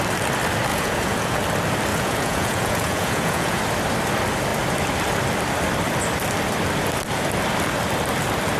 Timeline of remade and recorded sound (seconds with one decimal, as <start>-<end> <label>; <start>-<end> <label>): 0.0-0.7 recorded; 0.7-1.4 remade; 1.4-1.9 recorded; 1.9-3.6 remade; 3.6-8.6 recorded